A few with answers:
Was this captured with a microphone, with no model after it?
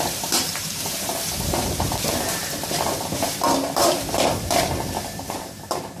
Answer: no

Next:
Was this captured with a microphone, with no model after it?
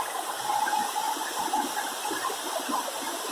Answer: no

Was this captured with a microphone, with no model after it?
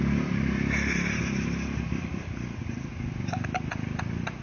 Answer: yes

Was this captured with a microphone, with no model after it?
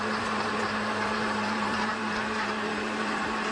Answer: no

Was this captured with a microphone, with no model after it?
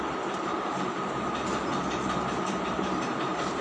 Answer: no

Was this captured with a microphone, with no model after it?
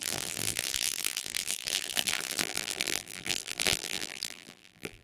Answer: no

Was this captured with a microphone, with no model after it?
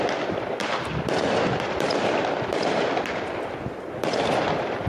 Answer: yes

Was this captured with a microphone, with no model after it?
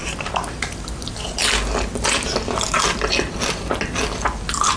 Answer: yes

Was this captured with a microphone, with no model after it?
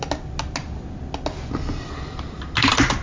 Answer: yes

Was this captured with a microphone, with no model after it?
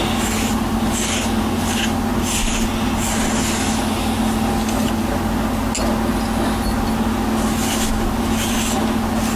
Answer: yes